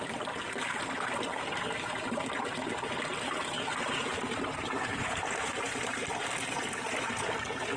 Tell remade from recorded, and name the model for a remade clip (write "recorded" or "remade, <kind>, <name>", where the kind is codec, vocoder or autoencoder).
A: recorded